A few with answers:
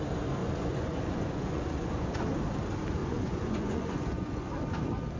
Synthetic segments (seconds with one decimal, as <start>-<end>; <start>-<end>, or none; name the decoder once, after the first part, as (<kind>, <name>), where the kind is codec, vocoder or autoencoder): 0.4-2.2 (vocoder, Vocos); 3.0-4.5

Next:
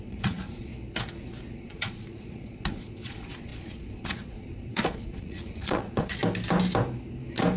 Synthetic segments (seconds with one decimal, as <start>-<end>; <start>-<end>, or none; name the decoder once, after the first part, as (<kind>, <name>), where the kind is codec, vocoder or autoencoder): 0.0-0.7 (vocoder, Vocos); 1.6-6.2

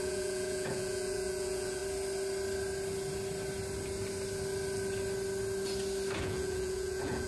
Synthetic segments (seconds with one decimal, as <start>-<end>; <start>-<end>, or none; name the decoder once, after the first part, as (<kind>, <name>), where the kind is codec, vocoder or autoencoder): 0.0-1.8 (vocoder, Vocos); 6.2-7.3

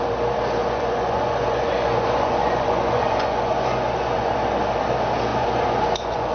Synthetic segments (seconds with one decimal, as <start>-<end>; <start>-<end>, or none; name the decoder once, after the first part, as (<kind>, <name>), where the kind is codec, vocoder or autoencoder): 0.6-4.4 (vocoder, Vocos); 5.3-6.3

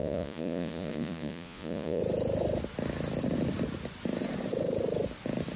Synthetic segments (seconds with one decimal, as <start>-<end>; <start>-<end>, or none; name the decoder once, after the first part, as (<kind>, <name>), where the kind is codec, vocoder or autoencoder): 0.0-2.0 (vocoder, Vocos)

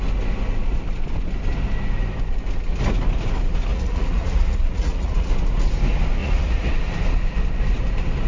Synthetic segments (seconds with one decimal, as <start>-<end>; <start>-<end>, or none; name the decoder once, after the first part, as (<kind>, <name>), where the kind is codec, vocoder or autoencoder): 3.7-5.3 (vocoder, Vocos); 6.2-6.7

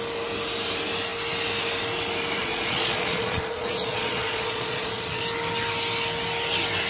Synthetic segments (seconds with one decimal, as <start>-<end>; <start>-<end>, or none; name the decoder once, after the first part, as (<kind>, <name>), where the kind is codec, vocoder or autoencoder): 2.4-5.2 (vocoder, Vocos)